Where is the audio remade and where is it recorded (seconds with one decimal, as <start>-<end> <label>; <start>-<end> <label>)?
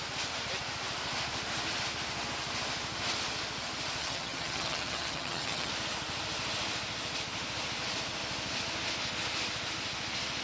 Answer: 0.0-4.0 recorded; 4.0-5.7 remade; 5.7-10.4 recorded